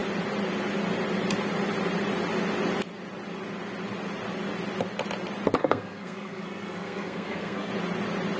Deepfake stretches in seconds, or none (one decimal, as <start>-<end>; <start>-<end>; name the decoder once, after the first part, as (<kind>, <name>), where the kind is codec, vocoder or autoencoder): 5.6-7.7 (codec, SNAC)